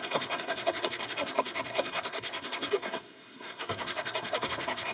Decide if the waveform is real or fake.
fake